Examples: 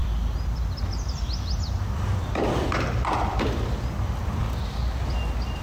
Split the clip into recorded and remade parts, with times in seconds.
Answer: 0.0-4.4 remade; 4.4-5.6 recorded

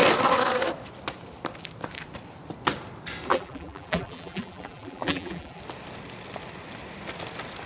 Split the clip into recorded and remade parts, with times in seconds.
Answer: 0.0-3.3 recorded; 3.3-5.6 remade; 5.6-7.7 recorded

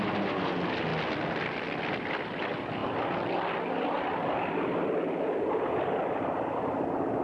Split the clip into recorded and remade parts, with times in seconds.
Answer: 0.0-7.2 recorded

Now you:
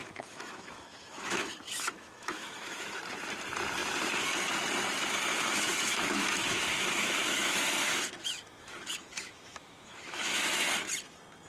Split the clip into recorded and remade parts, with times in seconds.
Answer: 0.0-3.0 remade; 3.0-5.3 recorded; 5.3-10.5 remade; 10.5-11.5 recorded

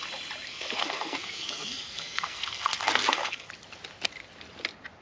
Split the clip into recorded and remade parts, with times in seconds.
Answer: 0.0-0.5 recorded; 0.5-3.5 remade; 3.5-5.0 recorded

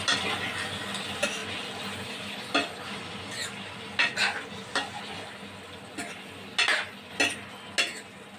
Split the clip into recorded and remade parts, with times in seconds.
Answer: 0.0-8.4 recorded

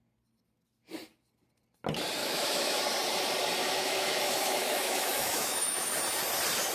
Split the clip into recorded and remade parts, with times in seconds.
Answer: 0.0-2.2 recorded; 2.2-2.8 remade; 2.8-3.6 recorded; 3.6-5.9 remade; 5.9-6.7 recorded

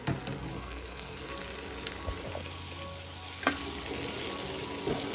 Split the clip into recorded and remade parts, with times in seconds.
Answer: 0.0-0.5 recorded; 0.5-1.3 remade; 1.3-5.1 recorded